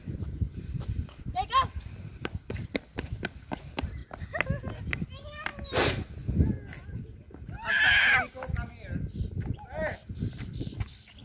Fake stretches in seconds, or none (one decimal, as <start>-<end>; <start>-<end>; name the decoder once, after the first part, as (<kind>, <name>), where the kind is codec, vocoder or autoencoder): none